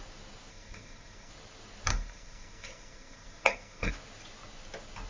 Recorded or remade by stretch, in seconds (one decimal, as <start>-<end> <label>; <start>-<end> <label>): 0.0-0.5 recorded; 0.5-1.3 remade; 1.3-1.9 recorded; 1.9-3.9 remade; 3.9-5.1 recorded